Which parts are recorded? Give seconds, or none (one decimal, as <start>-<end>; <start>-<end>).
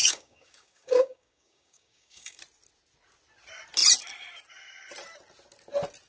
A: 2.4-6.1